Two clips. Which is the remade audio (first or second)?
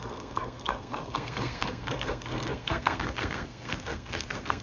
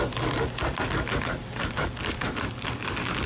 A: first